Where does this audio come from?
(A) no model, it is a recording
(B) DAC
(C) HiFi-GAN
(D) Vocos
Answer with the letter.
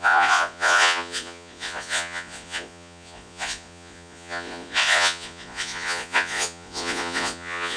D